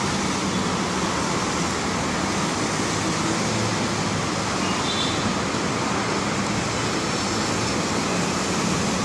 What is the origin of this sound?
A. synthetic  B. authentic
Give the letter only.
B